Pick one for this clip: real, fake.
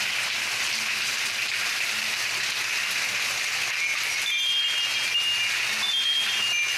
real